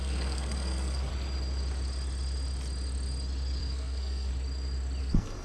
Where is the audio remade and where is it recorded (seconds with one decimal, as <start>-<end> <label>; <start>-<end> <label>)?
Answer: 0.0-1.1 remade; 1.1-3.6 recorded; 3.6-4.3 remade; 4.3-5.0 recorded; 5.0-5.4 remade

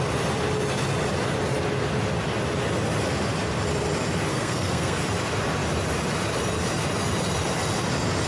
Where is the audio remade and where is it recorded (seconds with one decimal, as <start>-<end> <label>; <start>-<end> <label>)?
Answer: 0.0-4.3 recorded; 4.3-5.0 remade; 5.0-8.3 recorded

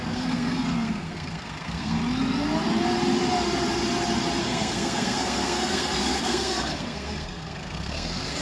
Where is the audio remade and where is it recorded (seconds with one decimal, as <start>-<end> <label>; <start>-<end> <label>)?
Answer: 0.0-2.0 remade; 2.0-4.4 recorded; 4.4-8.4 remade

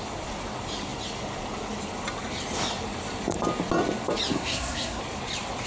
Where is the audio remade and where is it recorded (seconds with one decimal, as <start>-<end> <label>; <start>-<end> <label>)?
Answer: 0.0-4.3 recorded; 4.3-5.0 remade; 5.0-5.7 recorded